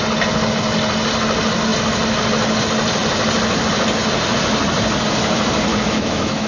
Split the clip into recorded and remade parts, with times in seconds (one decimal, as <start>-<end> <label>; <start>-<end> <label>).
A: 0.0-5.7 recorded; 5.7-6.5 remade